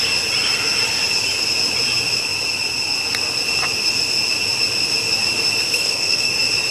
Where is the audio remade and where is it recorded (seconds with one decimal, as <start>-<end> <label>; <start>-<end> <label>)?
0.0-5.7 recorded; 5.7-6.3 remade; 6.3-6.7 recorded